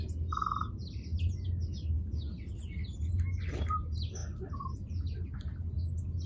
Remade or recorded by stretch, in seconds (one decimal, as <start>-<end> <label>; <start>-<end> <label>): 0.0-6.3 recorded